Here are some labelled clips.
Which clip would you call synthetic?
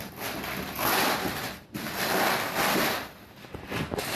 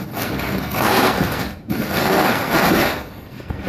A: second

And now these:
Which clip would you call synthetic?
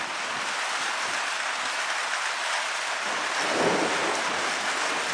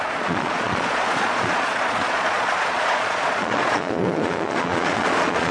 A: second